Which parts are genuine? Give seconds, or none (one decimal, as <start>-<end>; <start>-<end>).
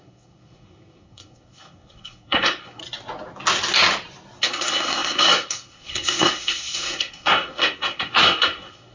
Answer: 2.8-4.4